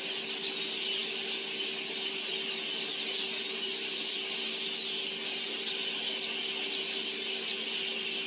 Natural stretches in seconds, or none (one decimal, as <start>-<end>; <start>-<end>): 0.0-8.3